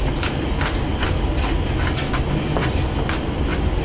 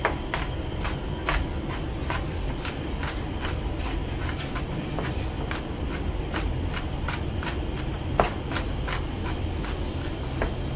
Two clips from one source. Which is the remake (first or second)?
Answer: second